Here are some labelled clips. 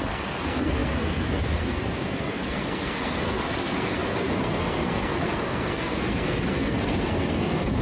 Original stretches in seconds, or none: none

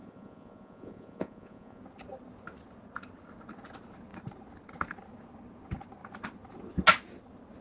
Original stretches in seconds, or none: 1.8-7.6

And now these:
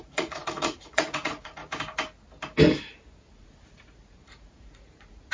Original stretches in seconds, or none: 1.6-3.4